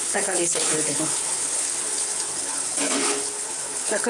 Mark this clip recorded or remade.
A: remade